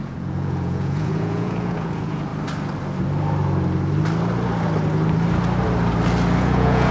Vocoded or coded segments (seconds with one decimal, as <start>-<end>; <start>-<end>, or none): 0.0-2.3; 6.4-6.9